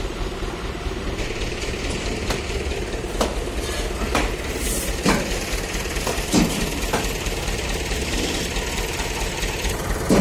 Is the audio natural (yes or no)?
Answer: no